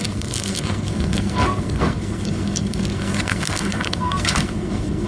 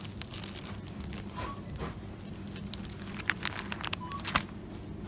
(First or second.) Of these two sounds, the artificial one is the first